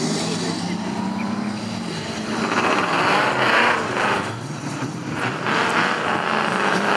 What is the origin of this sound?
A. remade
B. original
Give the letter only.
B